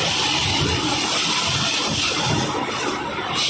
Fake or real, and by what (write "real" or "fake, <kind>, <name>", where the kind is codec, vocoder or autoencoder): real